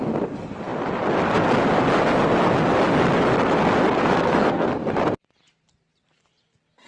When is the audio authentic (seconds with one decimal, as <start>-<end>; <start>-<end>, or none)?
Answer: 0.0-4.0; 4.7-6.9